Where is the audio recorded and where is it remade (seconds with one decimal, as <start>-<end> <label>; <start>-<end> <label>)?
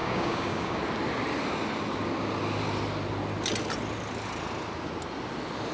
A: 0.0-0.8 remade; 0.8-5.7 recorded